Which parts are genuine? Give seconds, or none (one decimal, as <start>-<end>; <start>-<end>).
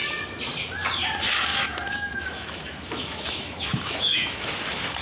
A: 0.0-1.5; 4.5-5.0